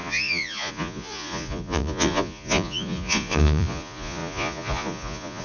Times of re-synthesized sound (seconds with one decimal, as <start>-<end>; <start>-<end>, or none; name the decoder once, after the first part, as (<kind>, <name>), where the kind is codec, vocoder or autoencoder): 0.0-5.4 (vocoder, Vocos)